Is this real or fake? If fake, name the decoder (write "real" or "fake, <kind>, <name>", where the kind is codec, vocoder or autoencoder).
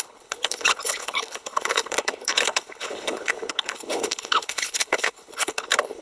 fake, codec, HILCodec